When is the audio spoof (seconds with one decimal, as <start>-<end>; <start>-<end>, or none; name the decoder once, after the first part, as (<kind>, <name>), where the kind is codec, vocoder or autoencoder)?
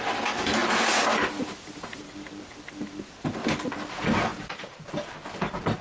0.0-0.6 (vocoder, BigVGAN v2); 1.4-5.8